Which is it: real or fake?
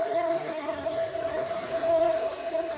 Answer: fake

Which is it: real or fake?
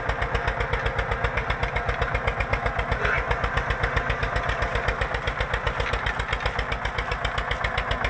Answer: real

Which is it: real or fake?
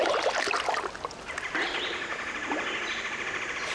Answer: real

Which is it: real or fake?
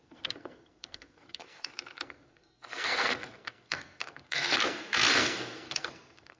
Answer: fake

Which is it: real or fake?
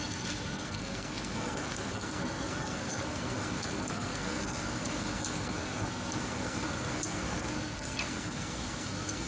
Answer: fake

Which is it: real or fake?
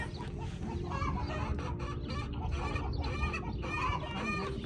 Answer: real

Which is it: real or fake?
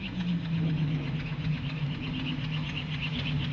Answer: real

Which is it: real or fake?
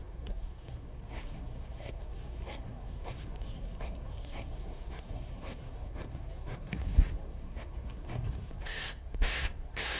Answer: fake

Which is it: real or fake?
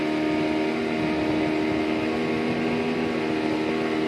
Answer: real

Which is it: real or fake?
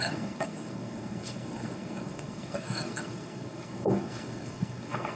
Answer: fake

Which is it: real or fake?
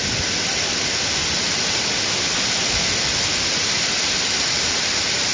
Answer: real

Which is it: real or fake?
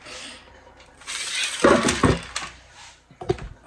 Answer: real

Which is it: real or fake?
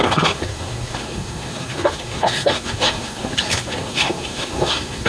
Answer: fake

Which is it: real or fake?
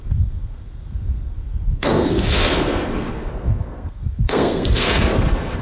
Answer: fake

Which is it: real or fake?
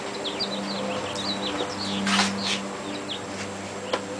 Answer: real